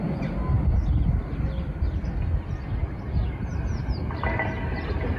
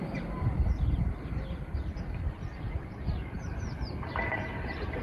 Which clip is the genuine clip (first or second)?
first